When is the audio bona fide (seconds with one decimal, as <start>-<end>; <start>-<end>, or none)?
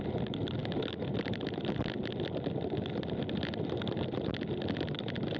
0.0-5.4